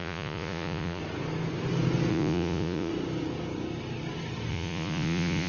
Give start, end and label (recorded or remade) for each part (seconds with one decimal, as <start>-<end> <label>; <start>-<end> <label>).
0.0-1.0 remade; 1.0-2.1 recorded; 2.1-2.9 remade; 2.9-4.5 recorded; 4.5-5.5 remade